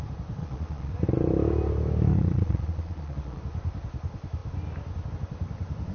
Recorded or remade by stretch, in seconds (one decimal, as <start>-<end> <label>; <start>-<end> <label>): 0.0-0.4 recorded; 0.4-0.9 remade; 0.9-2.1 recorded; 2.1-3.4 remade; 3.4-5.9 recorded